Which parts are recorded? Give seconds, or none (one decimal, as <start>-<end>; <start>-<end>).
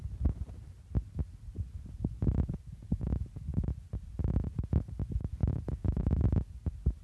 1.0-7.0